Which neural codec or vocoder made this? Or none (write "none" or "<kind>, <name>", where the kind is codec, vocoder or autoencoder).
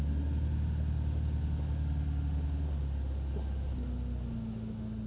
none